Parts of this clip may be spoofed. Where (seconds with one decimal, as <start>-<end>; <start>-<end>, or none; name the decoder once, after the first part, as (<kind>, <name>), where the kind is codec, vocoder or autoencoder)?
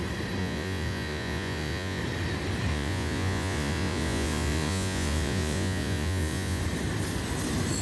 0.4-2.0 (vocoder, Vocos); 2.7-6.6